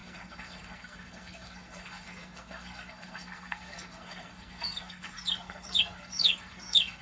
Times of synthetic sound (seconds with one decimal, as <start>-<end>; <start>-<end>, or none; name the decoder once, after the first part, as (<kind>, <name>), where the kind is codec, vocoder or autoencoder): 0.0-7.0 (codec, SNAC)